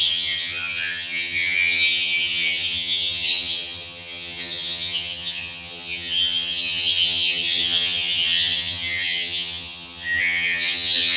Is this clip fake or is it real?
fake